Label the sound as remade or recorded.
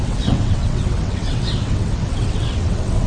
remade